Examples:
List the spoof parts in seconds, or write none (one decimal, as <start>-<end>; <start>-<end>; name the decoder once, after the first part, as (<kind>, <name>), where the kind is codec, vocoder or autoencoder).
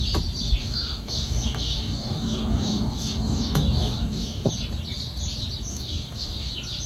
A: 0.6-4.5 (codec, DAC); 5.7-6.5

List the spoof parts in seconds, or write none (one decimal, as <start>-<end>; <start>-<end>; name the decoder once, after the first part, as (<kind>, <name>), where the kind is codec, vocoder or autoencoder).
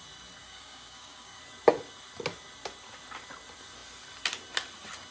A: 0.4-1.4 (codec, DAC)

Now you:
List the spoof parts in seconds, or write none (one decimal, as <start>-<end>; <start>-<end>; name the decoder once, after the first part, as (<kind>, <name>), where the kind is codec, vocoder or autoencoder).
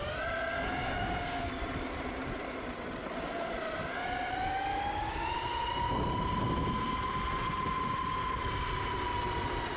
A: 0.8-1.5 (codec, DAC); 4.7-5.3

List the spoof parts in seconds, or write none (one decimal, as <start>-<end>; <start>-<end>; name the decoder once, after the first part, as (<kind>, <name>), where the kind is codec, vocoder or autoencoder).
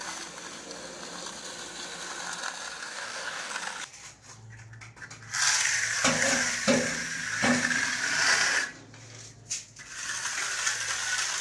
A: 2.8-3.5 (codec, DAC)